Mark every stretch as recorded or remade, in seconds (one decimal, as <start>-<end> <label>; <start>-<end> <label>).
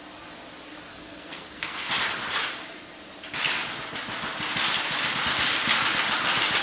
0.0-0.9 recorded; 0.9-1.9 remade; 1.9-6.6 recorded